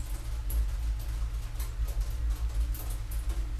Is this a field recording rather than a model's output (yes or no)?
yes